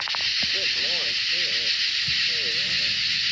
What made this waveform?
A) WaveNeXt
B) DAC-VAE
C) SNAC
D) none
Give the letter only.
D